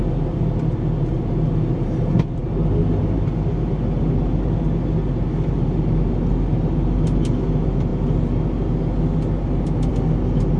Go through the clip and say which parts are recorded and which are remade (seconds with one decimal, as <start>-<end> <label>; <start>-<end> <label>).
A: 0.0-10.6 recorded